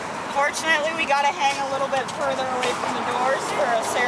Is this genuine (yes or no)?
yes